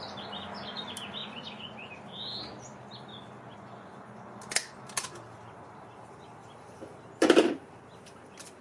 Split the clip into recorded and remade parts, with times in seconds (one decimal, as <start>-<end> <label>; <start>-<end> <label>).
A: 0.0-1.2 recorded; 1.2-1.9 remade; 1.9-3.1 recorded; 3.1-4.4 remade; 4.4-8.6 recorded